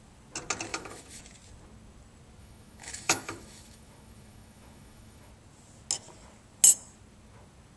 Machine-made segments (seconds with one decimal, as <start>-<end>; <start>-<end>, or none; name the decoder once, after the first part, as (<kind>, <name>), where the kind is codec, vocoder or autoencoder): 0.7-1.2 (autoencoder, DAC-VAE); 2.4-5.3